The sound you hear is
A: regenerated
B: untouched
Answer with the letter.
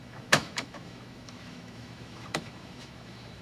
A